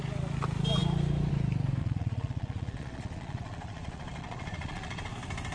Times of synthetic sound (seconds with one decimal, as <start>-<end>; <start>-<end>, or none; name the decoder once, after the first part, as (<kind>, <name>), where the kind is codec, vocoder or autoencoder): 1.8-5.1 (vocoder, Vocos)